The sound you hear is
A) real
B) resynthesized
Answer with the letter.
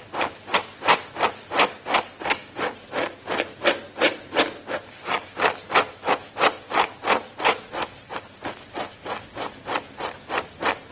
A